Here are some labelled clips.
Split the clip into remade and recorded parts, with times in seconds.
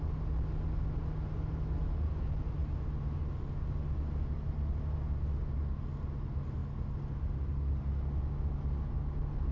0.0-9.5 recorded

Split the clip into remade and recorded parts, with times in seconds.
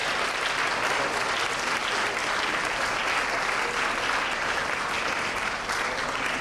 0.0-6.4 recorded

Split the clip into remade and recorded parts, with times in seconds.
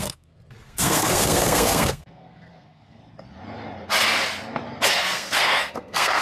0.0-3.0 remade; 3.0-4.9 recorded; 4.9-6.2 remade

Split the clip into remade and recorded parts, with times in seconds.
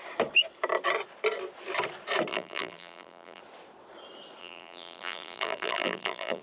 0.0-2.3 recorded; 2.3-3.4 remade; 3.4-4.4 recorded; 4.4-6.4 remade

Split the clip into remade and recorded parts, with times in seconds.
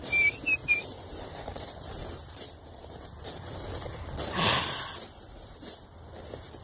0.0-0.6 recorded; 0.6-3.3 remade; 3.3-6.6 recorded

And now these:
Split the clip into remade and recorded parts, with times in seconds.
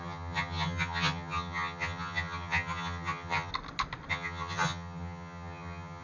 0.0-3.5 remade; 3.5-4.1 recorded; 4.1-6.0 remade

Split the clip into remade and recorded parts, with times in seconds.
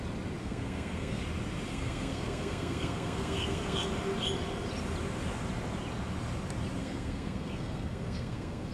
0.0-0.4 recorded; 0.4-1.2 remade; 1.2-1.7 recorded; 1.7-3.9 remade; 3.9-6.8 recorded; 6.8-8.7 remade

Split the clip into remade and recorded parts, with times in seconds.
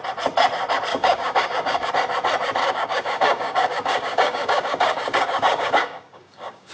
0.0-0.9 recorded; 0.9-1.9 remade; 1.9-2.6 recorded; 2.6-6.7 remade